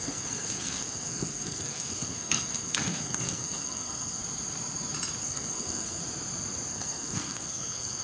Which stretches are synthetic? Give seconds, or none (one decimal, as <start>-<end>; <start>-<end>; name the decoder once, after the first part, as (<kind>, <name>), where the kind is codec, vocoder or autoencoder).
0.0-4.2 (codec, SNAC); 5.2-6.0; 6.7-8.0